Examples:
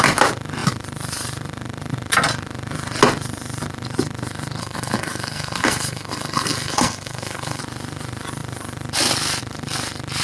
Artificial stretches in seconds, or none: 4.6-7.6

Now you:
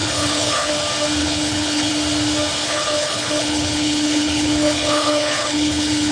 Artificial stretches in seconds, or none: 0.0-0.7; 1.2-1.9; 2.6-6.1

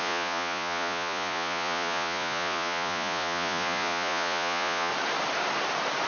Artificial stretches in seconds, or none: 0.0-4.9

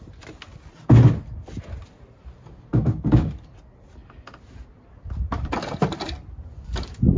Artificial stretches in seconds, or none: 2.7-3.3

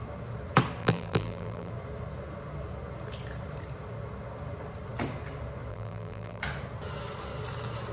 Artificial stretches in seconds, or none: 0.8-1.7; 5.7-6.4